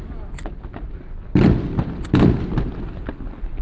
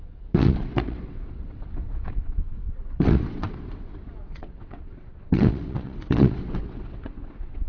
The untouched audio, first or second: first